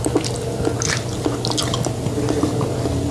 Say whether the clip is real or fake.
real